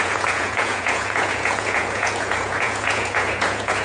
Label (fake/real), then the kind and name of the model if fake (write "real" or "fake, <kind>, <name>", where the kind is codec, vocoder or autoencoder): fake, vocoder, Vocos